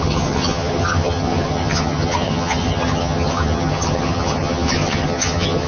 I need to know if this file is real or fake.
fake